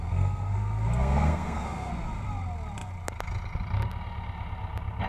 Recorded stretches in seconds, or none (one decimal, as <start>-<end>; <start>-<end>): 1.9-5.1